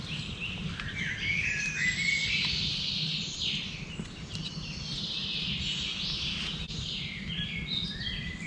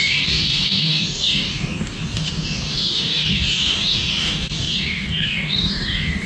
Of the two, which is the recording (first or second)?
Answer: first